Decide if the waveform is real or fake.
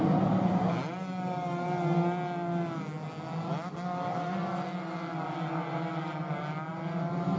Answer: real